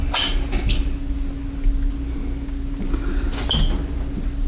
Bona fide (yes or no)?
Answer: yes